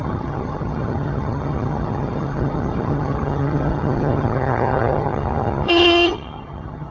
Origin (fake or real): fake